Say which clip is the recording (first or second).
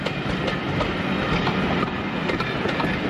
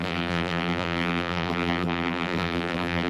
first